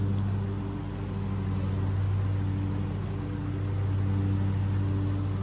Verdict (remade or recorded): recorded